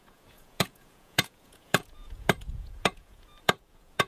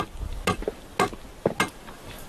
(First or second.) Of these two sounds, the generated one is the first